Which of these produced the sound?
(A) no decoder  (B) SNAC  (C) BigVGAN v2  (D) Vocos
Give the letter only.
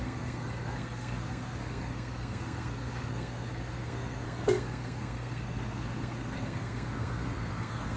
B